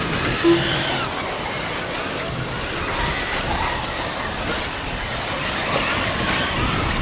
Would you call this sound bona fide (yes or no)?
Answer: yes